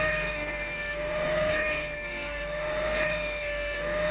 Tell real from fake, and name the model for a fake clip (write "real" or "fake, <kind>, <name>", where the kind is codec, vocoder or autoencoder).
fake, codec, SNAC